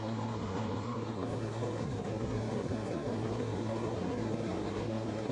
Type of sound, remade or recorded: remade